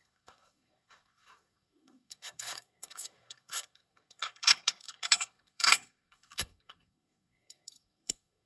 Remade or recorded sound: remade